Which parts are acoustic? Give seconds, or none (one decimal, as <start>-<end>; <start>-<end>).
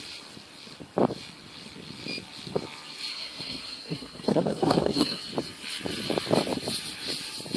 0.0-3.1; 5.2-7.6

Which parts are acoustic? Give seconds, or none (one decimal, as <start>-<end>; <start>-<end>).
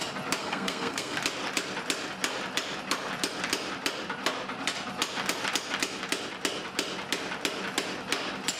0.0-0.4; 1.2-8.6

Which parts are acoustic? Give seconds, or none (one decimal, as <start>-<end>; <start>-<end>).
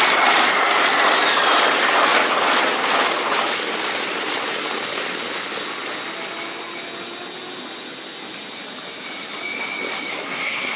0.0-10.1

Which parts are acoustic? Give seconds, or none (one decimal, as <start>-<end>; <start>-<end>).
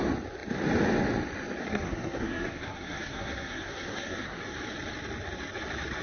0.0-1.6; 4.4-6.0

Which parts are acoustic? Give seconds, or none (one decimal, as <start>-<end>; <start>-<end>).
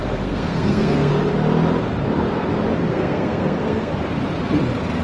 1.1-2.8; 3.9-5.0